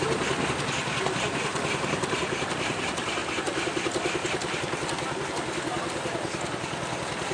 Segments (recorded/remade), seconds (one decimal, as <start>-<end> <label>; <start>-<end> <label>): 0.0-7.3 recorded